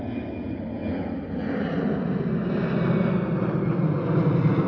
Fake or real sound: real